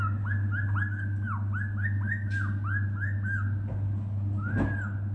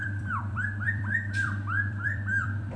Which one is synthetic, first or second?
second